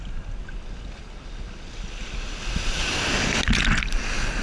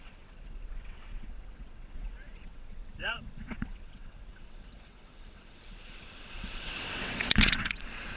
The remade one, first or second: second